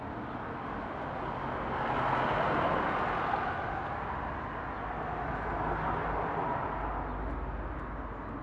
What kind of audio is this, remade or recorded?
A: recorded